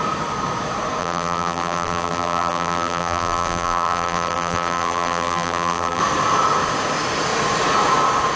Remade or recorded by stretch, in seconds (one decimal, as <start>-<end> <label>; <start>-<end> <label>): 0.0-1.0 recorded; 1.0-6.0 remade; 6.0-8.4 recorded